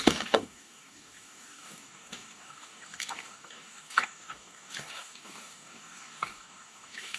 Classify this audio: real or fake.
fake